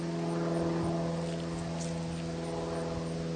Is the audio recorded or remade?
recorded